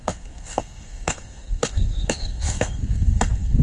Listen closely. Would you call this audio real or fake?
fake